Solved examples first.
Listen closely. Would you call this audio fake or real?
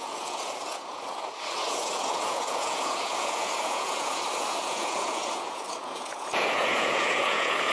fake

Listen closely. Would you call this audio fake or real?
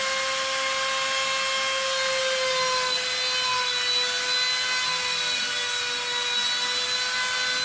real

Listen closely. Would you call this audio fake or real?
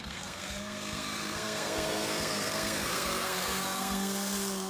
fake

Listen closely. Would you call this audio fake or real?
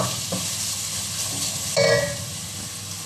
real